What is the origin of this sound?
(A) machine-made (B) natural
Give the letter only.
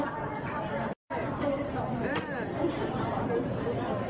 A